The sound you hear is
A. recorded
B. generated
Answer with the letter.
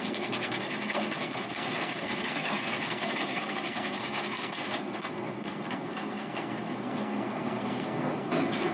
B